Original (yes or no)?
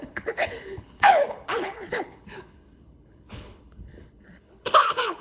no